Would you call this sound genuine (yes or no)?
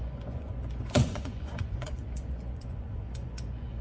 no